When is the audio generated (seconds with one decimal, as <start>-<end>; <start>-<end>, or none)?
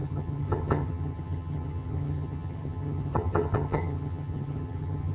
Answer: 0.0-5.1